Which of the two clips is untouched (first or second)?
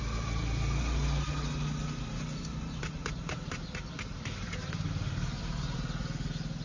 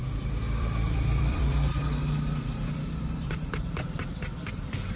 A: first